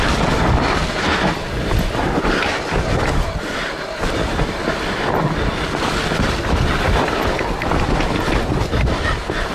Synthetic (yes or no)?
no